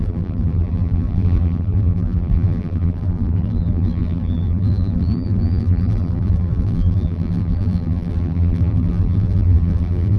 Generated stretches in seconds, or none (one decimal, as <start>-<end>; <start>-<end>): 0.0-10.2